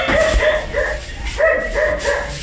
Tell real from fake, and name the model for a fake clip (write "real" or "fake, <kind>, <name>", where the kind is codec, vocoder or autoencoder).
real